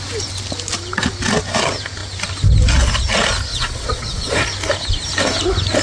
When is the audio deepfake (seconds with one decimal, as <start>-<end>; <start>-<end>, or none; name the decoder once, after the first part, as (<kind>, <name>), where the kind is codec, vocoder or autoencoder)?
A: 3.5-4.5 (vocoder, Vocos)